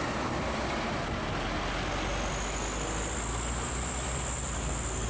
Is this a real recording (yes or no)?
yes